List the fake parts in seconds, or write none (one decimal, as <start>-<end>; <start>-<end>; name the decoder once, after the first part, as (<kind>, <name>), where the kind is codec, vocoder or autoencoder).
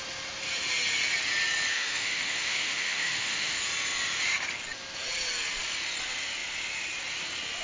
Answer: 1.7-3.6 (autoencoder, DAC-VAE)